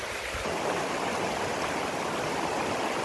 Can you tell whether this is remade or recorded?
recorded